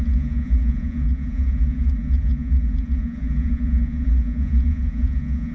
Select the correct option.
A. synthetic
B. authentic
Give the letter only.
A